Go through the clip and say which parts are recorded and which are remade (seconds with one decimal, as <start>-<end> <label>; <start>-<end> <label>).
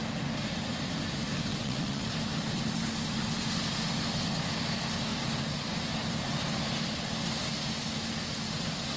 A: 0.0-1.5 recorded; 1.5-2.0 remade; 2.0-9.0 recorded